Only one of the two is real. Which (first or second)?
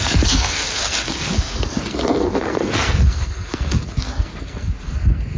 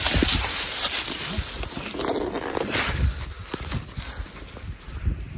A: second